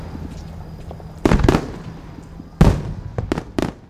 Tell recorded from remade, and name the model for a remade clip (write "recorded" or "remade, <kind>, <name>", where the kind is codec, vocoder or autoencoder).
recorded